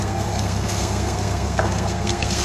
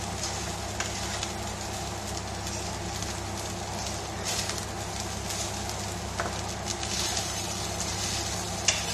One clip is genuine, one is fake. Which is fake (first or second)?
first